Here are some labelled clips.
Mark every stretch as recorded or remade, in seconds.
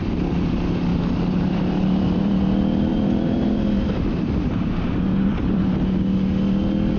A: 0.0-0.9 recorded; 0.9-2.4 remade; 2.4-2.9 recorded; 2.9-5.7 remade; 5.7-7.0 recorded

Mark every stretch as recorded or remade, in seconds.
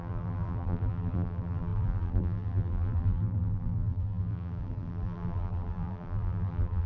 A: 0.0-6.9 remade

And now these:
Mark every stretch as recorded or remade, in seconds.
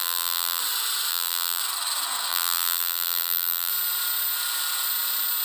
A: 0.0-0.6 remade; 0.6-1.1 recorded; 1.1-1.6 remade; 1.6-2.3 recorded; 2.3-3.7 remade; 3.7-5.4 recorded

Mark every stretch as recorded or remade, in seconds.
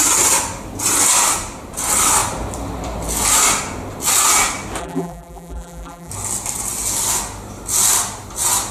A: 0.0-4.8 recorded; 4.8-6.1 remade; 6.1-8.7 recorded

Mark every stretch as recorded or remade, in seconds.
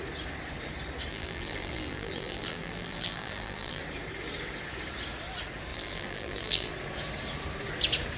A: 0.0-1.1 recorded; 1.1-3.8 remade; 3.8-5.7 recorded; 5.7-6.7 remade; 6.7-8.2 recorded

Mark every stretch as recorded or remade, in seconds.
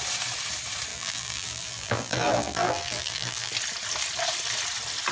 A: 0.0-0.9 recorded; 0.9-3.5 remade; 3.5-5.1 recorded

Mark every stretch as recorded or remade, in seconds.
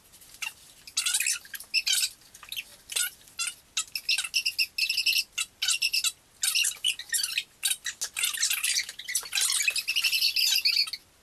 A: 0.0-11.2 recorded